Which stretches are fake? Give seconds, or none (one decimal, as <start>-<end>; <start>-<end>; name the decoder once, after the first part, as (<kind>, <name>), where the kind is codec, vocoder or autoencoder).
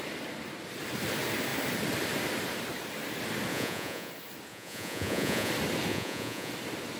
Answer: 3.5-4.1 (vocoder, Vocos); 4.5-5.5; 5.9-6.5